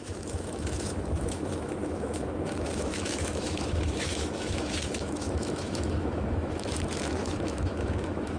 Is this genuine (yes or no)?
no